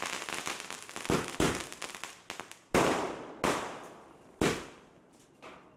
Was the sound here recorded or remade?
recorded